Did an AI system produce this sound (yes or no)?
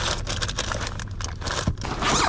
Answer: no